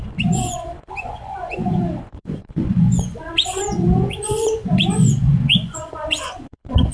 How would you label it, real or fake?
fake